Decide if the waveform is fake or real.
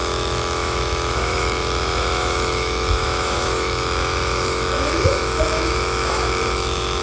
fake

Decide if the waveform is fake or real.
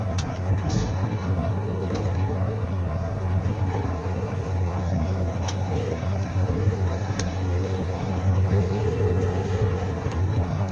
fake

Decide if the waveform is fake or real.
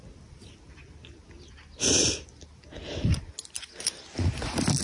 real